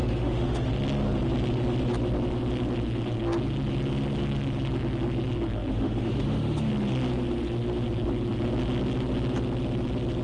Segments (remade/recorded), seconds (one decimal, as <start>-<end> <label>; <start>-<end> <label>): 0.0-0.7 remade; 0.7-5.7 recorded; 5.7-6.7 remade; 6.7-10.2 recorded

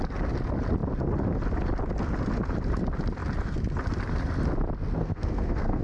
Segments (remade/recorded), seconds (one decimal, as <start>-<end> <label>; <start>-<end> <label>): 0.0-5.0 recorded; 5.0-5.8 remade

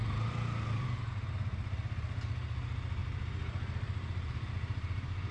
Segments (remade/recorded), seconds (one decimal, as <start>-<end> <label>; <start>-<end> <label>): 0.0-3.0 recorded; 3.0-5.3 remade

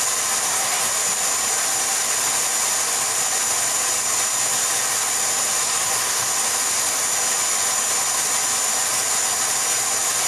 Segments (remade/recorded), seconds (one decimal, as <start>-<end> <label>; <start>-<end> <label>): 0.0-0.4 recorded; 0.4-0.9 remade; 0.9-5.6 recorded; 5.6-6.3 remade; 6.3-10.3 recorded

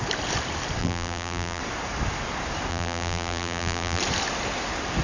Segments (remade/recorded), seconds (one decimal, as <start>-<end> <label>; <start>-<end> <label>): 0.0-0.8 recorded; 0.8-1.6 remade; 1.6-2.7 recorded; 2.7-4.0 remade; 4.0-5.0 recorded

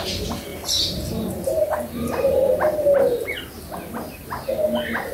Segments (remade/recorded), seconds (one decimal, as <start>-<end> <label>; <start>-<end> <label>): 0.0-0.5 recorded; 0.5-3.6 remade; 3.6-5.1 recorded

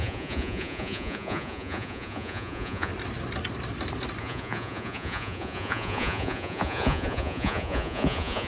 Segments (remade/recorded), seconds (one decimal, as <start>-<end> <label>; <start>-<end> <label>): 0.0-2.9 remade; 2.9-4.2 recorded; 4.2-8.5 remade